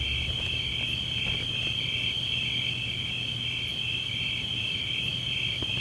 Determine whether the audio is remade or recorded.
recorded